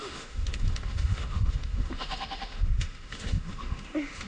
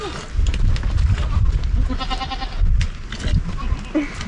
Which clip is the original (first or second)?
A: second